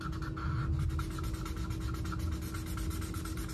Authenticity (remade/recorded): recorded